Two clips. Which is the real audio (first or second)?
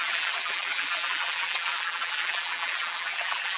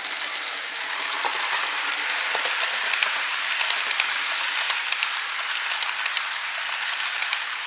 second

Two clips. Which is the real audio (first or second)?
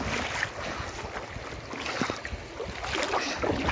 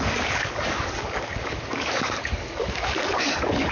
first